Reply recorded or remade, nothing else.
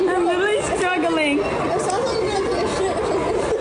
recorded